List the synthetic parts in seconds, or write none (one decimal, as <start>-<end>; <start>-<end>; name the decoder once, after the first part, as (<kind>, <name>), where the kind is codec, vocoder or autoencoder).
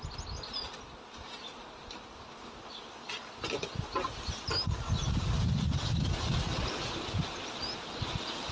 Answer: none